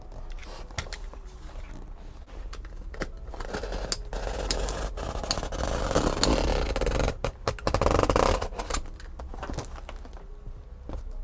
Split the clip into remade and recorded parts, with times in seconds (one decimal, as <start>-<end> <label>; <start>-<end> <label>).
0.0-11.2 recorded